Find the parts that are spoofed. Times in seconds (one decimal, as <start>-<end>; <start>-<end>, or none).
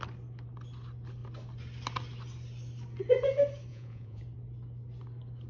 3.7-4.2